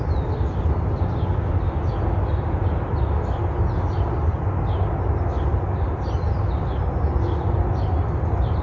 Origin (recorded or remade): recorded